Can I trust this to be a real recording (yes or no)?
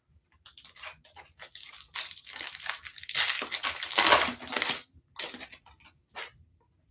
yes